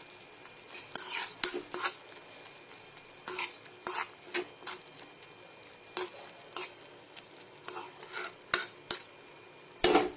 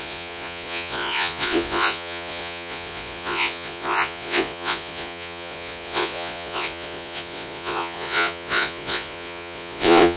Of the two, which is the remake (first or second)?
second